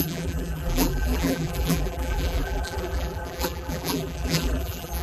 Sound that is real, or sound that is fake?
fake